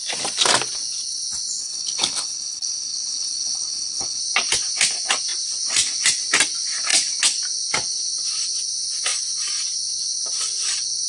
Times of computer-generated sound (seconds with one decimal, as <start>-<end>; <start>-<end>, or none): 1.6-4.2